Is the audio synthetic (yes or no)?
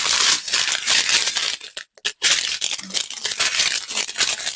no